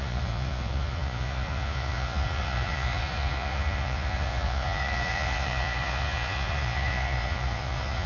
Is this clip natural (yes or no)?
no